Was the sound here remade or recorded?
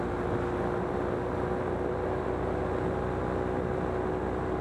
recorded